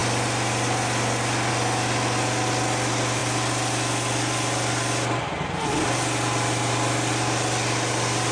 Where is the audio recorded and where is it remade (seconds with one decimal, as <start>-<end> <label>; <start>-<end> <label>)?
0.0-8.3 recorded